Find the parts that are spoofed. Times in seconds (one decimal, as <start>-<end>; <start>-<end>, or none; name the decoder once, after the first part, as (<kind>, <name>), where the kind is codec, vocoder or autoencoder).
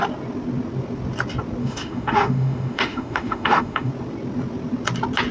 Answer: 1.6-3.9 (autoencoder, DAC-VAE)